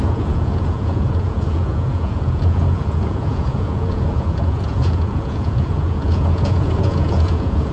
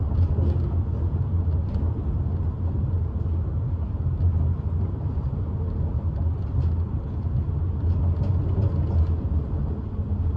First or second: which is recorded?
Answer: second